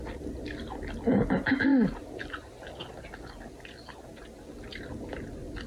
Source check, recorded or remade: recorded